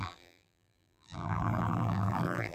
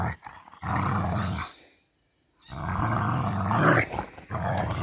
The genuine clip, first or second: second